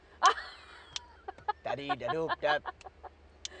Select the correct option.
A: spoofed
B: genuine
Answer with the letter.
B